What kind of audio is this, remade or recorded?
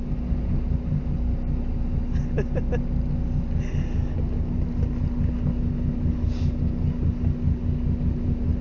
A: recorded